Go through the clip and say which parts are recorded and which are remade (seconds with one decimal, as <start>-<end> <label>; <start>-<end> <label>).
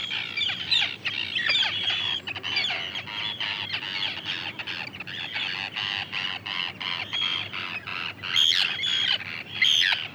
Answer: 0.0-0.8 remade; 0.8-7.9 recorded; 7.9-10.1 remade